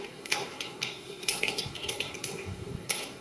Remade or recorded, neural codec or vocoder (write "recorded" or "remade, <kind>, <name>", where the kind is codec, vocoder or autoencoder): remade, codec, SNAC